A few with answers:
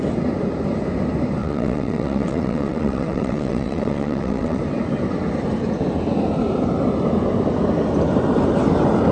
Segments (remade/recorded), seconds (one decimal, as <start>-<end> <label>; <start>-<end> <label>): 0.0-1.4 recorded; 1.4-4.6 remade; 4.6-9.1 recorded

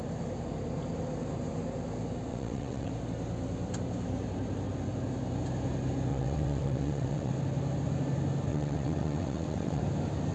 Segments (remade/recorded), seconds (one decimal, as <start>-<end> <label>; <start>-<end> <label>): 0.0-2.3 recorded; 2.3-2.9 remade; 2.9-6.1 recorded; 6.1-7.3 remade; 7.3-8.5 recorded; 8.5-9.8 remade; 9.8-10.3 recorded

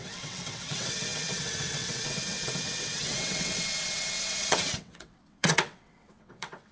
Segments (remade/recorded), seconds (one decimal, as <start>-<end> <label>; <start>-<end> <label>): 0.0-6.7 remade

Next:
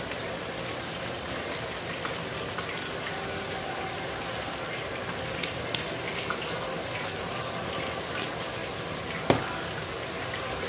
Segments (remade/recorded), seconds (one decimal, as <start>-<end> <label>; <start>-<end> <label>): 0.0-10.7 recorded